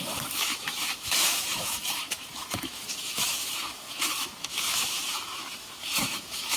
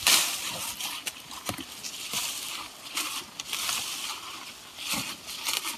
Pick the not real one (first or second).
first